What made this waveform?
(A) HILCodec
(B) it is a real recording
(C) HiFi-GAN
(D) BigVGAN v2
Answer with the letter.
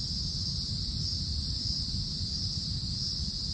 B